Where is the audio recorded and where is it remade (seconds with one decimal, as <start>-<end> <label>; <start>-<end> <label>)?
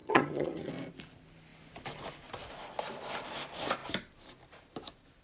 0.0-0.7 remade; 0.7-5.2 recorded